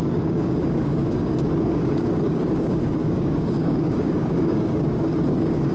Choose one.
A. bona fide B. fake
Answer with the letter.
B